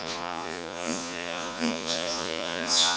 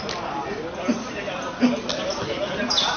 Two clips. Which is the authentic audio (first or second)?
second